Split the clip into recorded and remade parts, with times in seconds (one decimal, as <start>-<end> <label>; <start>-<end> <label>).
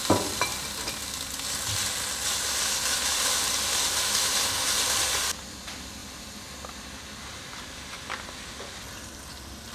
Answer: 0.0-9.7 recorded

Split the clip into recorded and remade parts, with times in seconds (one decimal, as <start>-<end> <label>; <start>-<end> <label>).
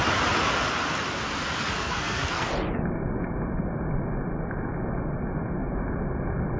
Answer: 0.0-1.6 recorded; 1.6-2.5 remade; 2.5-6.6 recorded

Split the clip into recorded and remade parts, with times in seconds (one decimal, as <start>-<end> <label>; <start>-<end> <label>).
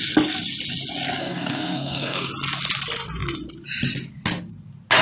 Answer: 0.0-1.2 recorded; 1.2-2.3 remade; 2.3-5.0 recorded